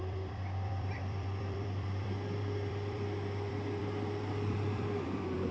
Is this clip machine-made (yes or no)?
yes